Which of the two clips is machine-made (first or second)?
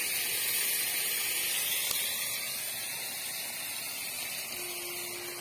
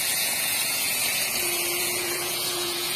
second